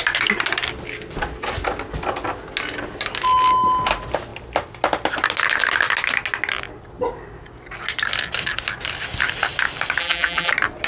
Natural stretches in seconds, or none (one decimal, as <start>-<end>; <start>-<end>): 0.0-10.0; 10.5-10.9